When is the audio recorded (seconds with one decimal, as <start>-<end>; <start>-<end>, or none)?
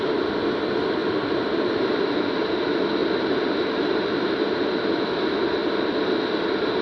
0.0-1.0; 1.9-3.0; 4.4-6.8